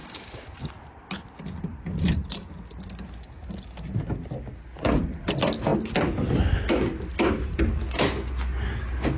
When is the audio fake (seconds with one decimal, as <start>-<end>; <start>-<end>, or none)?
0.0-0.7